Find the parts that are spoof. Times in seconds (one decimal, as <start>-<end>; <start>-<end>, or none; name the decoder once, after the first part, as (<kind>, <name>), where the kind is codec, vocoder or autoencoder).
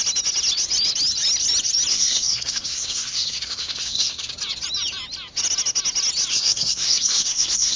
1.9-4.3 (codec, SNAC); 6.3-7.8